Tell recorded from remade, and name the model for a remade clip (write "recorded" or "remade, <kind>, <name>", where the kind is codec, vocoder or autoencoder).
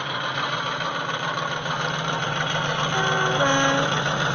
recorded